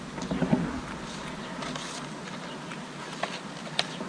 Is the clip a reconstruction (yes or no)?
no